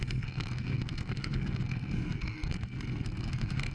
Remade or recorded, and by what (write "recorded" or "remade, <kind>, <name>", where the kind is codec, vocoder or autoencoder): remade, codec, SNAC